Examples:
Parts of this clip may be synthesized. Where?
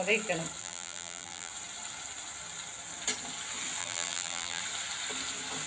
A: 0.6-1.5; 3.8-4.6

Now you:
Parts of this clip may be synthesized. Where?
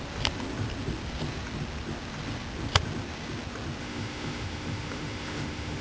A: 3.8-5.8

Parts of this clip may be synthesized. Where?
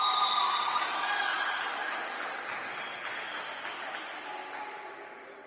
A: none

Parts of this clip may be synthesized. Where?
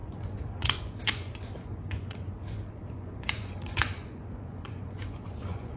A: 0.0-5.8